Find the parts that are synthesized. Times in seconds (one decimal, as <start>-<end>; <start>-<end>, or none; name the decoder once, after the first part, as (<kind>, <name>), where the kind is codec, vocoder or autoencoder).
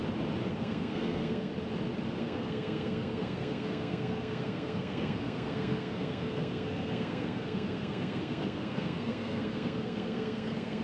0.5-1.5 (codec, SNAC); 2.2-10.8